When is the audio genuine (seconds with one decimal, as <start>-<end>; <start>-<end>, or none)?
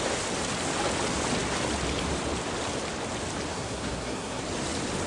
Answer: 0.0-3.5; 4.4-5.1